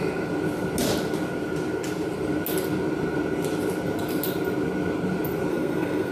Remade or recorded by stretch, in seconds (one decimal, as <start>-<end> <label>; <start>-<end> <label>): 0.0-5.5 recorded; 5.5-6.1 remade